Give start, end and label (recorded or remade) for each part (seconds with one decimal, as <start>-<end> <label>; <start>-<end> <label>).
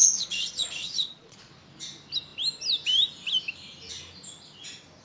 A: 0.0-1.5 remade; 1.5-5.0 recorded